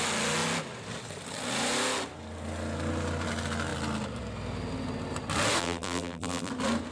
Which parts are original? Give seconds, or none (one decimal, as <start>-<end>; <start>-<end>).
0.0-5.6; 6.5-6.9

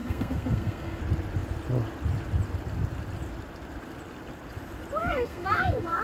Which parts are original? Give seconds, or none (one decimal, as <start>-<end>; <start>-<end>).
1.0-5.0

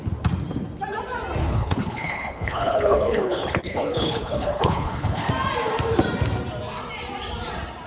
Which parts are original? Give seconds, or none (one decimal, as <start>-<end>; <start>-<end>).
0.0-1.4; 5.3-7.9

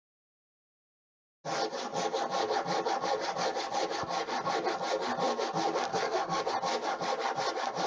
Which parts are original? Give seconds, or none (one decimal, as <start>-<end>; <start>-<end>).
0.0-5.9; 6.4-7.9

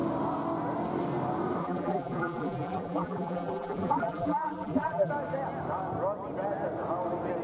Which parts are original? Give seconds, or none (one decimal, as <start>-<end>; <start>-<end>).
0.0-1.6; 5.1-7.4